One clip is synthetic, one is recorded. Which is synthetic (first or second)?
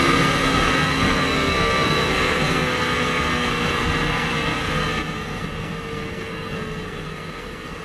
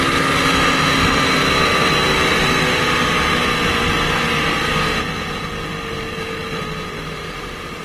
first